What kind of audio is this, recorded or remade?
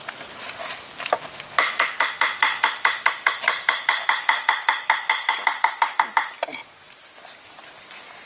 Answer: recorded